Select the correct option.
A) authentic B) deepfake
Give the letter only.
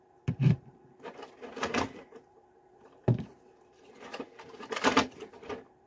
B